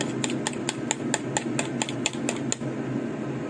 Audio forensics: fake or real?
real